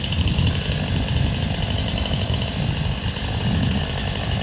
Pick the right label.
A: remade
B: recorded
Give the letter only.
B